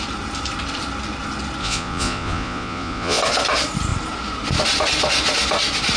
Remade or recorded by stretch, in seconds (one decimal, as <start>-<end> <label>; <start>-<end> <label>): 0.0-1.6 recorded; 1.6-3.2 remade; 3.2-6.0 recorded